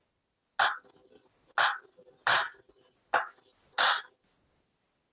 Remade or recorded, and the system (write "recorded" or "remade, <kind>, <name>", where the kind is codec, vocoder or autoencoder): recorded